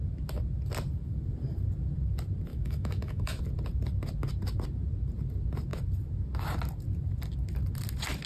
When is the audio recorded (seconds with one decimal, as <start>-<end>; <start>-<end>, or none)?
0.0-2.5; 3.4-8.3